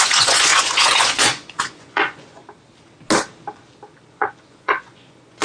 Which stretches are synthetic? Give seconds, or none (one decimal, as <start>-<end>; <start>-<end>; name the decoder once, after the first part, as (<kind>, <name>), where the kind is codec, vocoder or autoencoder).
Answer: 0.0-2.4 (vocoder, Vocos); 4.1-5.4